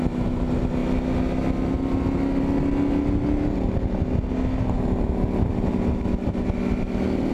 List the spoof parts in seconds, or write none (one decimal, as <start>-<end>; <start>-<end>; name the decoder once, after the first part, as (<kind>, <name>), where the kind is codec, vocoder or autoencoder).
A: none

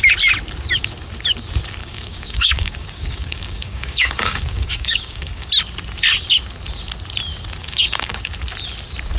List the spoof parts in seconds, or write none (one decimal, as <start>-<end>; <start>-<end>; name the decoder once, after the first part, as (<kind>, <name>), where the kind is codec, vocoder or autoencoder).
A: 1.8-5.5 (codec, DAC); 7.6-8.3

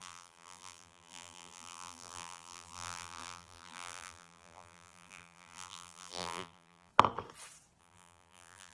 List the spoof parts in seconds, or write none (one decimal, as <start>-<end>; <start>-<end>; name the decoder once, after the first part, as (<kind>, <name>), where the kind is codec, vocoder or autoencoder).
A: 0.0-6.9 (vocoder, BigVGAN v2); 7.8-8.7